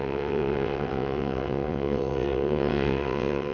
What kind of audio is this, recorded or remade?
remade